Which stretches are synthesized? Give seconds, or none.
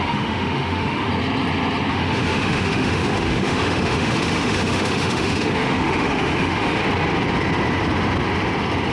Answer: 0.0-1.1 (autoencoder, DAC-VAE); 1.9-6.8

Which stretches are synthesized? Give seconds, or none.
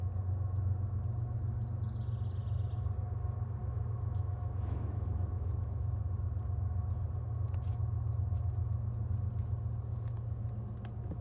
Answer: 3.6-6.0 (autoencoder, DAC-VAE)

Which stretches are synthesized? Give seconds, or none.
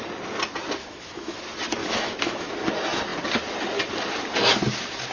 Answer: 0.8-1.4 (autoencoder, DAC-VAE); 1.8-2.5